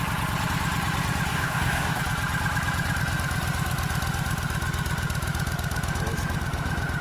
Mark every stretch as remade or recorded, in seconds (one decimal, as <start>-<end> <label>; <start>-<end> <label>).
0.0-1.3 recorded; 1.3-2.0 remade; 2.0-7.0 recorded